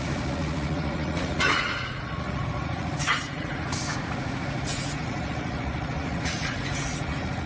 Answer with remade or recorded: remade